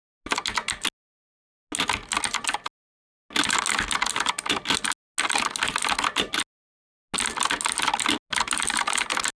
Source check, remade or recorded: recorded